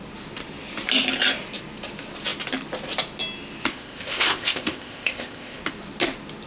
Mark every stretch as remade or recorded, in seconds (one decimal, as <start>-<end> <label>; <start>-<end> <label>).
0.0-3.7 recorded; 3.7-5.6 remade; 5.6-6.5 recorded